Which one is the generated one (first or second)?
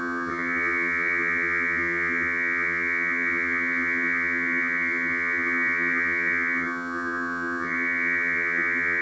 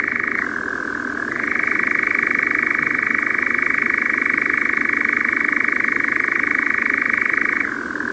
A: first